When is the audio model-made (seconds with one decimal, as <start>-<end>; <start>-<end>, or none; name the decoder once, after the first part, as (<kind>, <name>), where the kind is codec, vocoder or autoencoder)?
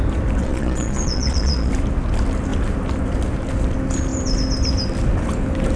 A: 0.4-1.7 (vocoder, Vocos)